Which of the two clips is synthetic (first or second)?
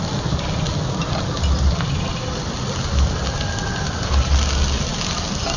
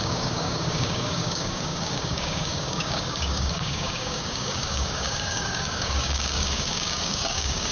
second